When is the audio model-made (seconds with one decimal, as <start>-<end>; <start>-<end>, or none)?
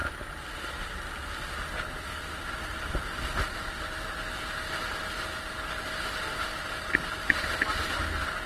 none